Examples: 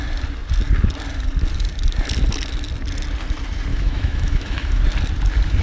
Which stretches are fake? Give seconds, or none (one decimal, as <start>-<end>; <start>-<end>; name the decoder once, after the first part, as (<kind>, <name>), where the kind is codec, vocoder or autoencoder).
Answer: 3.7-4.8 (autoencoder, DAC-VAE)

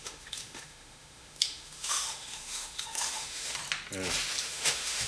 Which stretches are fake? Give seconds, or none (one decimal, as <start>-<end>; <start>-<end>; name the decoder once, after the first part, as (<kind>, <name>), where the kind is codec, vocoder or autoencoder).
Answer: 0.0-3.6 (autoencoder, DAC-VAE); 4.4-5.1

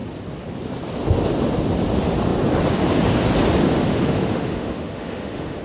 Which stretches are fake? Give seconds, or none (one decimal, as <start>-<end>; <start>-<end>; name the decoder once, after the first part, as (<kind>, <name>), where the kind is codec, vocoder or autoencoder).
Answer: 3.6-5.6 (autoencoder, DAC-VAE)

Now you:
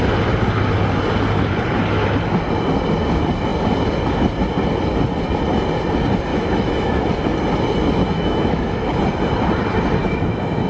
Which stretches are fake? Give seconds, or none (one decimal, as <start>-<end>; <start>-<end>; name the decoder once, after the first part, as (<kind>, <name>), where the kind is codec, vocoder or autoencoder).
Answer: 6.3-7.0 (autoencoder, DAC-VAE); 8.0-9.0; 10.0-10.7